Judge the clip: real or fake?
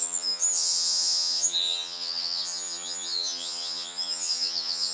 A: fake